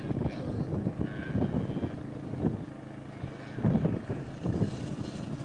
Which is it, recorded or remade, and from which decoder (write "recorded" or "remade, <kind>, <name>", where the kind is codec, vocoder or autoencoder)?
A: recorded